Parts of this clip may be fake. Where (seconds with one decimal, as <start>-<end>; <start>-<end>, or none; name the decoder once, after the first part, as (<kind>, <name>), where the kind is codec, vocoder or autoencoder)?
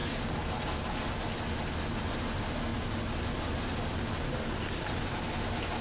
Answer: 2.1-2.7 (vocoder, BigVGAN v2)